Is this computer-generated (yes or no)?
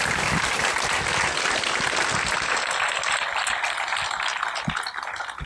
no